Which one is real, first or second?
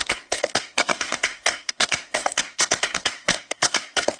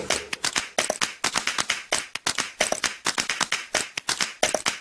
second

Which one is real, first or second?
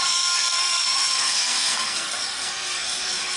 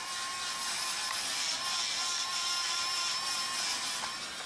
second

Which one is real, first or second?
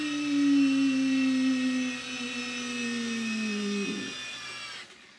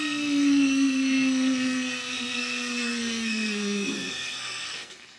first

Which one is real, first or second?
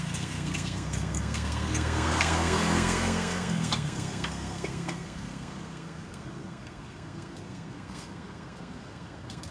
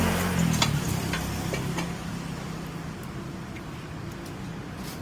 second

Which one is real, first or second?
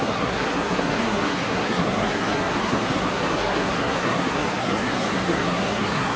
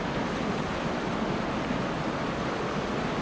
second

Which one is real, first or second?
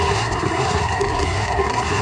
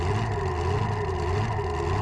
second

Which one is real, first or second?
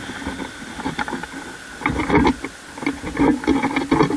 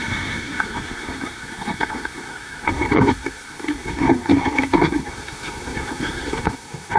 first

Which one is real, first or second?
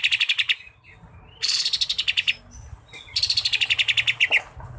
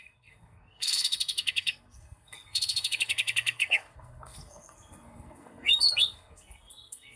first